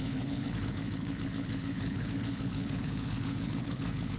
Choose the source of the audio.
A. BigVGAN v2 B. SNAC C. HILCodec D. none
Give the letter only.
C